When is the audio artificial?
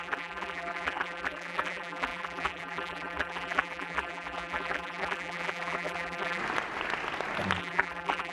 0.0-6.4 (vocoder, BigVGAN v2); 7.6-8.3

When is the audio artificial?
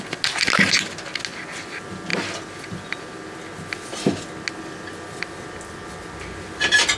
none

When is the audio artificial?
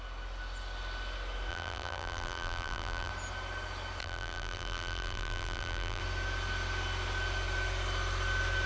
1.5-3.1 (vocoder, BigVGAN v2); 4.0-6.0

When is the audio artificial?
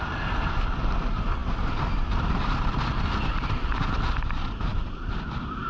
4.7-5.7 (vocoder, BigVGAN v2)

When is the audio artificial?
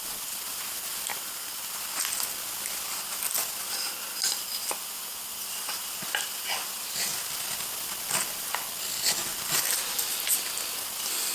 1.1-1.7 (vocoder, BigVGAN v2); 9.3-10.1